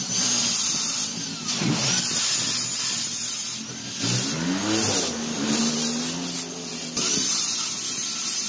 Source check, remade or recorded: recorded